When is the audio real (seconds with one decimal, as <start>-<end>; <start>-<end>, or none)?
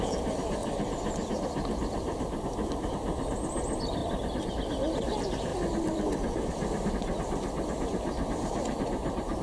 0.0-0.6; 2.9-4.0; 4.5-5.5; 6.9-9.4